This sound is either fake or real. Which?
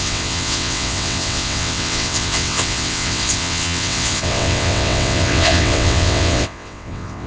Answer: fake